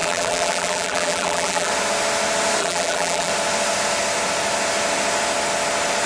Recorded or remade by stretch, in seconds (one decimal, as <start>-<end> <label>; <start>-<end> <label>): 0.0-1.7 remade; 1.7-2.6 recorded; 2.6-3.3 remade; 3.3-6.1 recorded